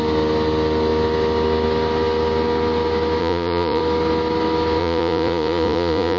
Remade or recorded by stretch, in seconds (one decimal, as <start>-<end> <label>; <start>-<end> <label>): 0.0-3.2 recorded; 3.2-3.8 remade; 3.8-4.8 recorded; 4.8-6.2 remade